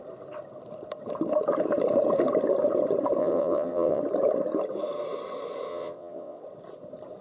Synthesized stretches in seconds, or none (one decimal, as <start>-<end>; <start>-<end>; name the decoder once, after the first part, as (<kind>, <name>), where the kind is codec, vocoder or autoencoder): 3.2-4.0 (vocoder, WaveNeXt); 5.7-6.4